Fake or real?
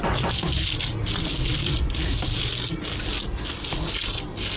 real